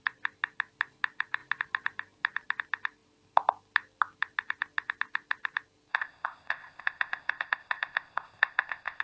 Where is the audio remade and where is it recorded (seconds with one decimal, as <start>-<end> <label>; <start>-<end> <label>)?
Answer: 0.0-5.9 recorded; 5.9-9.0 remade